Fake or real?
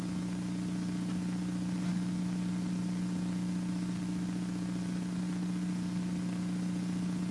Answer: real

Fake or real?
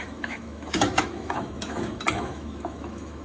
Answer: fake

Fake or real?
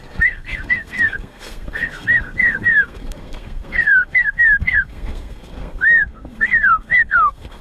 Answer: fake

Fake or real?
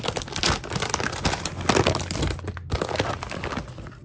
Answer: real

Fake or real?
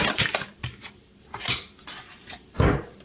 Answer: fake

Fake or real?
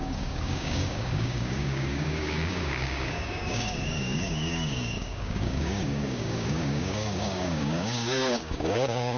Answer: fake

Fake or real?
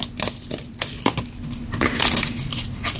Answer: real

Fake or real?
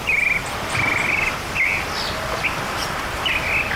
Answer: real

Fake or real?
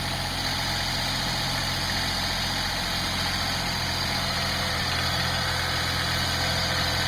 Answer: real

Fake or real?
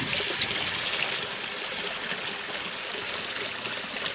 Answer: real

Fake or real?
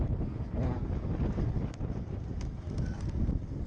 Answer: real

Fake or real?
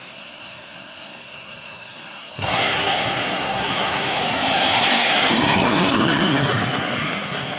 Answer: fake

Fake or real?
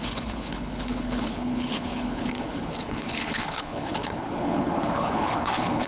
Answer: fake